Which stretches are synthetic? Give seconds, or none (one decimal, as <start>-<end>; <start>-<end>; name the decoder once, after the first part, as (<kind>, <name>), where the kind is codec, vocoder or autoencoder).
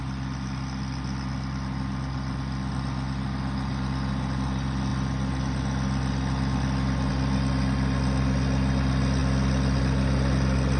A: none